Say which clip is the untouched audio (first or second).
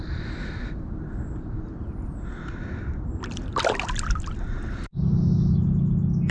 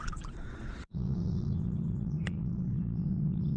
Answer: first